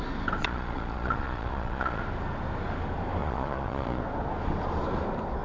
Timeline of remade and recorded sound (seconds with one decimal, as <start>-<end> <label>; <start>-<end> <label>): 0.0-0.4 recorded; 0.4-2.0 remade; 2.0-3.2 recorded; 3.2-4.0 remade; 4.0-5.4 recorded